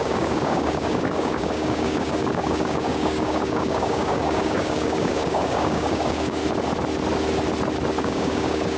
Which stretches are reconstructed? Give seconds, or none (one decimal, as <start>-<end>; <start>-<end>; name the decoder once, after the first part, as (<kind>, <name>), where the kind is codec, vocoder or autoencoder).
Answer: 0.0-6.4 (codec, DAC); 8.0-8.8